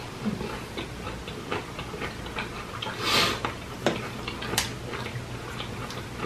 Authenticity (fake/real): real